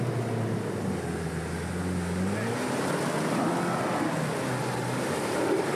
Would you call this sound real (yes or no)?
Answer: yes